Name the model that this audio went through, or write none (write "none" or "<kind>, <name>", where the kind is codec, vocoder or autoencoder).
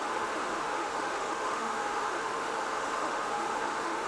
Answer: autoencoder, DAC-VAE